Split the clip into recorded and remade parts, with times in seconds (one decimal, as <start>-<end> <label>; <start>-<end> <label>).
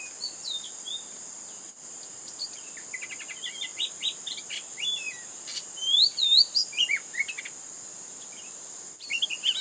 0.0-9.6 recorded